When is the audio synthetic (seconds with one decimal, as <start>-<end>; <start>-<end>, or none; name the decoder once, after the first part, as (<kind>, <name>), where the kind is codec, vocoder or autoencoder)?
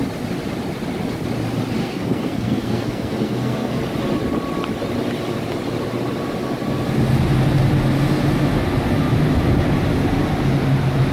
1.8-3.8 (codec, SNAC)